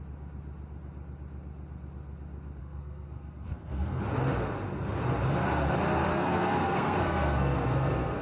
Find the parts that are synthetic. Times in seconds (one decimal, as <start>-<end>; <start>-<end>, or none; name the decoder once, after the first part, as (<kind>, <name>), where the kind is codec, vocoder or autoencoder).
2.6-4.0 (codec, SNAC); 6.1-8.2